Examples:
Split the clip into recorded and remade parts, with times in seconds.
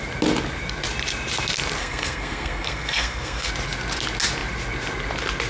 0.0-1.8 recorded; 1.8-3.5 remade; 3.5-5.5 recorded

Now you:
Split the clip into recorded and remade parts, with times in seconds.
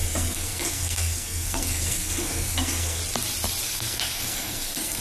0.0-3.0 remade; 3.0-3.6 recorded; 3.6-5.0 remade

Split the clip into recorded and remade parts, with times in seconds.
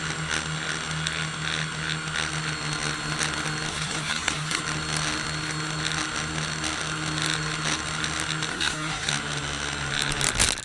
0.0-3.7 recorded; 3.7-4.6 remade; 4.6-8.5 recorded; 8.5-9.1 remade; 9.1-10.6 recorded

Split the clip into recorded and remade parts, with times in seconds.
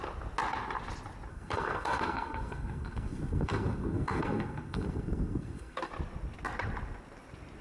0.0-1.3 recorded; 1.3-5.9 remade; 5.9-7.6 recorded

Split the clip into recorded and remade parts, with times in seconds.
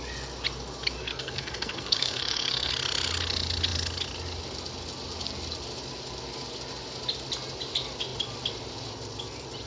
0.0-1.0 recorded; 1.0-2.7 remade; 2.7-9.7 recorded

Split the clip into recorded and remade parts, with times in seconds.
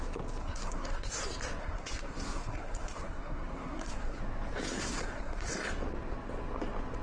0.0-0.4 recorded; 0.4-1.2 remade; 1.2-1.6 recorded; 1.6-4.2 remade; 4.2-4.8 recorded; 4.8-5.5 remade; 5.5-7.0 recorded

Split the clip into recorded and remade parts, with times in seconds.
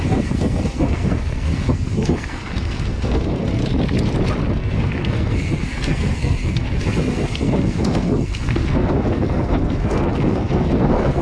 0.0-3.6 remade; 3.6-4.5 recorded; 4.5-11.2 remade